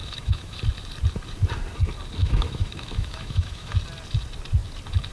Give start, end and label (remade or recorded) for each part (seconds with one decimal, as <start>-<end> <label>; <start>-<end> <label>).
0.0-0.6 remade; 0.6-2.2 recorded; 2.2-3.7 remade; 3.7-5.1 recorded